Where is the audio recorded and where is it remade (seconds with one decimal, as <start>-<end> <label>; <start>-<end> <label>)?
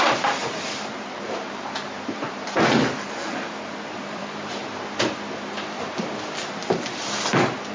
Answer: 0.0-4.6 remade; 4.6-6.7 recorded; 6.7-7.7 remade